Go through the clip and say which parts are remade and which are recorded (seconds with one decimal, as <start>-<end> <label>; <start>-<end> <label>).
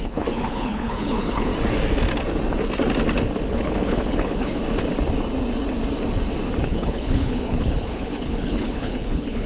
0.0-1.5 remade; 1.5-3.5 recorded; 3.5-4.6 remade; 4.6-6.6 recorded; 6.6-9.5 remade